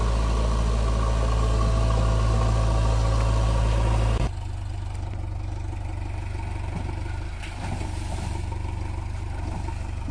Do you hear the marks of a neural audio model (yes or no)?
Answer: no